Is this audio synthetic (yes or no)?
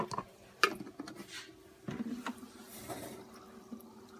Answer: no